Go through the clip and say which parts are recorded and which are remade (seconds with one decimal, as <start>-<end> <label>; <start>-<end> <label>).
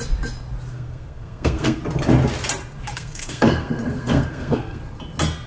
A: 0.0-0.7 recorded; 0.7-1.8 remade; 1.8-2.9 recorded; 2.9-4.8 remade; 4.8-5.5 recorded